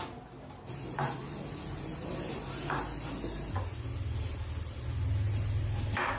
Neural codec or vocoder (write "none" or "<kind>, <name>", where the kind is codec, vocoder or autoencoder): none